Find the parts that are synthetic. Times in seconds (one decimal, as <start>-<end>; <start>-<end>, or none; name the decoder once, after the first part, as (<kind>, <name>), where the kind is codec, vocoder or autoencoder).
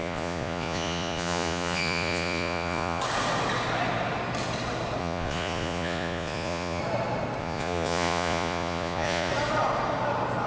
0.0-3.0 (vocoder, Vocos); 5.0-6.8; 7.4-9.3